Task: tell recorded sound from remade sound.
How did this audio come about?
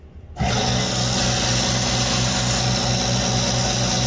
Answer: recorded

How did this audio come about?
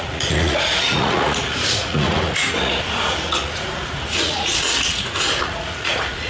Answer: remade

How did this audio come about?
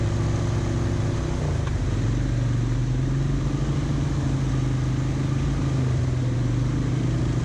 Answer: recorded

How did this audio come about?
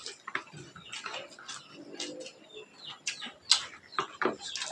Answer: recorded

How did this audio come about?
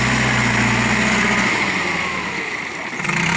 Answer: recorded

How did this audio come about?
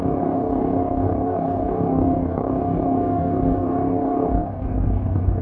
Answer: remade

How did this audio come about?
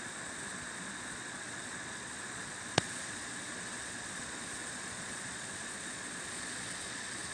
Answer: remade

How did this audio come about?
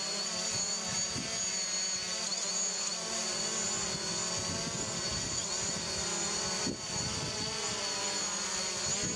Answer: recorded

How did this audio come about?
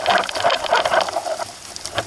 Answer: recorded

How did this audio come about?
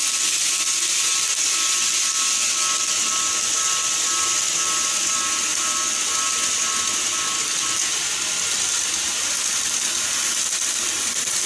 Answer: recorded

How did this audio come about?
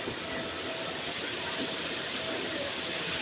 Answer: recorded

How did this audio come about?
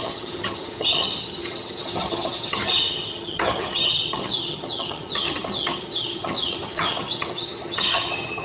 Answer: remade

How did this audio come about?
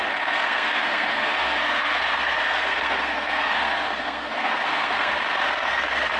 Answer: remade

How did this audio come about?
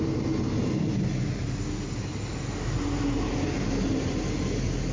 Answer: recorded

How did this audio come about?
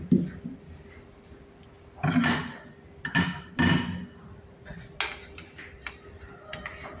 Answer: recorded